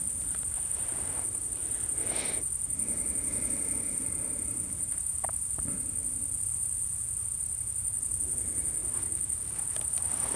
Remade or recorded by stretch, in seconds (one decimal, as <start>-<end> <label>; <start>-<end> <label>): 0.0-1.6 remade; 1.6-3.5 recorded; 3.5-10.4 remade